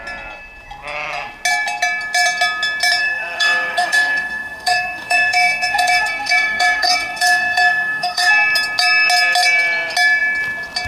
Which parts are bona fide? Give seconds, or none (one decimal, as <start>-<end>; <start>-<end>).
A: 0.0-3.0; 8.3-10.9